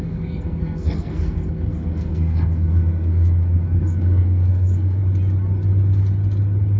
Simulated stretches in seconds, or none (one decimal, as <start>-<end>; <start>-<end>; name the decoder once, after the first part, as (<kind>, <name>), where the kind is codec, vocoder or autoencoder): 0.0-5.0 (codec, SNAC)